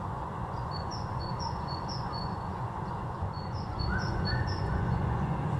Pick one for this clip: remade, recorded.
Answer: remade